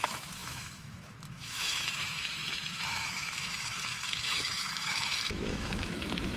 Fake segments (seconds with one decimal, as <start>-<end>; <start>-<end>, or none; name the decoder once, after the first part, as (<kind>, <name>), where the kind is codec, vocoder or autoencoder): 0.0-6.4 (autoencoder, DAC-VAE)